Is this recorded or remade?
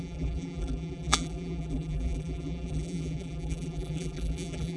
remade